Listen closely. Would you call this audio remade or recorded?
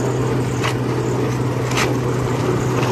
recorded